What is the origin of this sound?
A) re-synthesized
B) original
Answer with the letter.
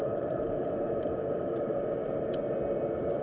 B